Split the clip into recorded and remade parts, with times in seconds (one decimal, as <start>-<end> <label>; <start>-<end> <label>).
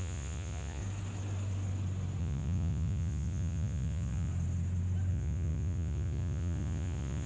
0.0-0.8 remade; 0.8-2.2 recorded; 2.2-4.3 remade; 4.3-5.1 recorded; 5.1-7.3 remade